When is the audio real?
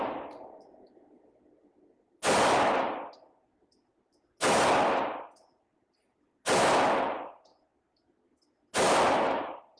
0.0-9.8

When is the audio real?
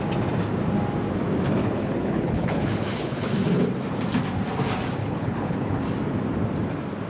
0.0-1.6; 3.6-5.0; 5.8-7.1